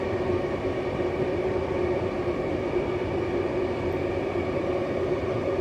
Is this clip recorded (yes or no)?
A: no